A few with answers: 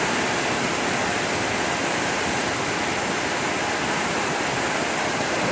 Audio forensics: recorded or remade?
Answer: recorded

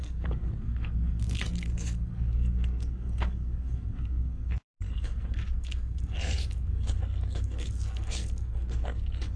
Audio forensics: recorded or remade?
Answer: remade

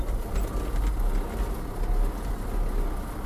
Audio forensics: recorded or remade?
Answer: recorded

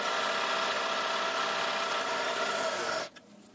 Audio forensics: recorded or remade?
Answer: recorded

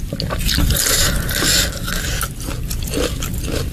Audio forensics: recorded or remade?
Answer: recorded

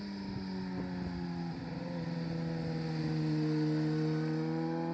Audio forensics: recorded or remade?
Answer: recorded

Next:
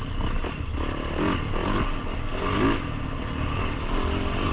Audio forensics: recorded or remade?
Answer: recorded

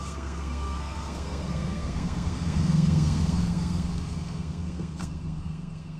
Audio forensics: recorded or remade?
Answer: remade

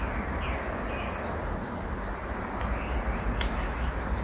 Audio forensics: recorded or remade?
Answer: recorded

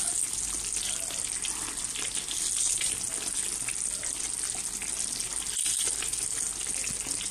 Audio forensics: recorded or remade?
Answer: recorded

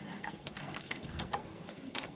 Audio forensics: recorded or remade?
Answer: remade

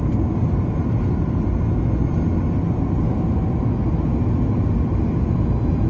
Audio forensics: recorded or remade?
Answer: recorded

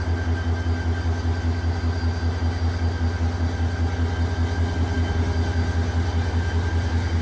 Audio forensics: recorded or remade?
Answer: recorded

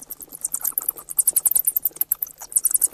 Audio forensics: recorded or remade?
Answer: recorded